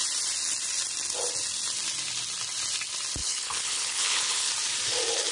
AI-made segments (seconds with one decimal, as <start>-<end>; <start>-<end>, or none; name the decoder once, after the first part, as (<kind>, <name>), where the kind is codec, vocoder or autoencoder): 3.2-4.5 (codec, HILCodec)